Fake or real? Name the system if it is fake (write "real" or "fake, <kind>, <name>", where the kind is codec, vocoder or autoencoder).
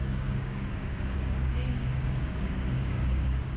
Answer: fake, codec, DAC